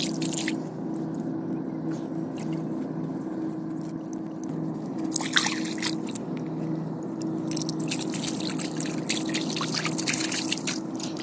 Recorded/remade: recorded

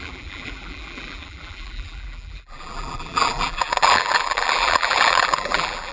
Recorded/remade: remade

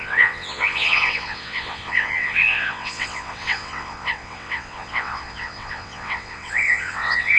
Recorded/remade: remade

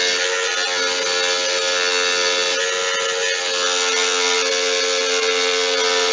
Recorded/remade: recorded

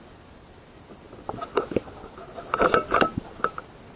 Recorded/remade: recorded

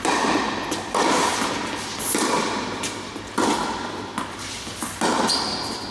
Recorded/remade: recorded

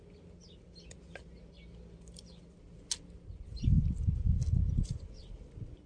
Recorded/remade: recorded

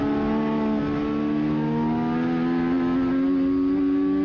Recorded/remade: recorded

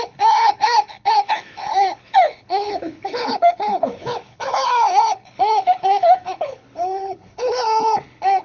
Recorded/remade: remade